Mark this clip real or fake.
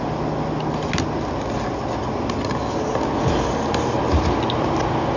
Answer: real